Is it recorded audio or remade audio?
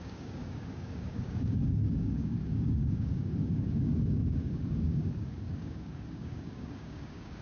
remade